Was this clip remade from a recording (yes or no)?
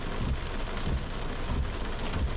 no